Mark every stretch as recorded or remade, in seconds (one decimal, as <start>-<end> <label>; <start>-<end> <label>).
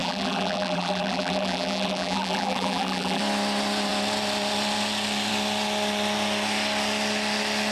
0.0-3.2 remade; 3.2-7.7 recorded